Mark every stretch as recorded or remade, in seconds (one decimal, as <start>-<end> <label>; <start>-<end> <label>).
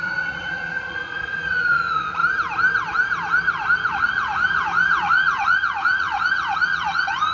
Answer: 0.0-2.2 remade; 2.2-3.9 recorded; 3.9-4.3 remade; 4.3-5.0 recorded; 5.0-7.3 remade